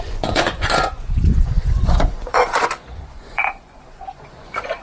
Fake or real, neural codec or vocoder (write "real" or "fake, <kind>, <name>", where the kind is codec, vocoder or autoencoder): fake, vocoder, Vocos